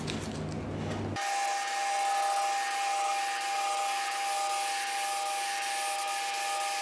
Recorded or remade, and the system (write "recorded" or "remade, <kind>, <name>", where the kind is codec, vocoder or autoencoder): recorded